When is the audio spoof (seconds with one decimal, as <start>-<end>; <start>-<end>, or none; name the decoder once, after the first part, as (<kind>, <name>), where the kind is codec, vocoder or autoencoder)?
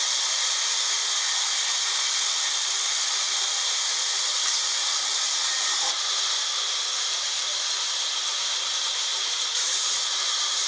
0.0-1.6 (vocoder, BigVGAN v2); 3.3-7.4; 8.8-10.7